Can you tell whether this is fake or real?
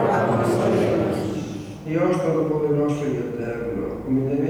real